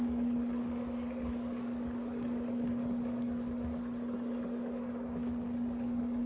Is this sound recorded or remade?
remade